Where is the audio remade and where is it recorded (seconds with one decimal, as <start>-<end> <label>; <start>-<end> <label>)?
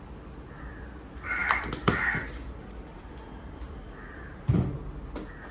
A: 0.0-1.4 recorded; 1.4-4.7 remade; 4.7-5.5 recorded